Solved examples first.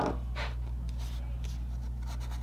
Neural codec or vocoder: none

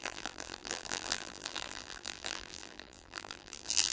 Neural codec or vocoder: vocoder, BigVGAN v2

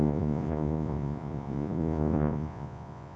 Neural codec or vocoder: vocoder, Vocos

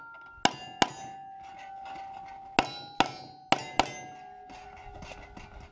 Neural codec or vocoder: none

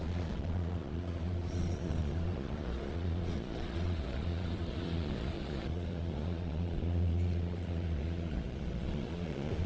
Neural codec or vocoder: vocoder, Vocos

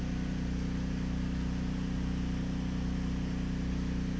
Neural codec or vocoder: none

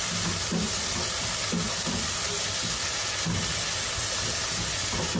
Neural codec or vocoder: none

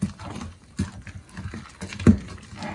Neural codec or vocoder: none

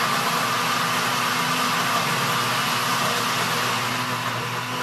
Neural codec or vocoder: none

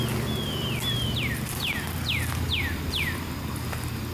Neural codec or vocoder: none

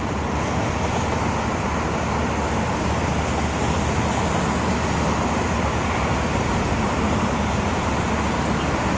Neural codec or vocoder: none